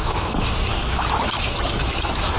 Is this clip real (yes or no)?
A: no